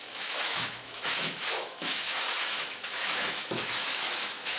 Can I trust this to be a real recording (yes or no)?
no